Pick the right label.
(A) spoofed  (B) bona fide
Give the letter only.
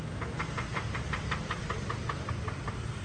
B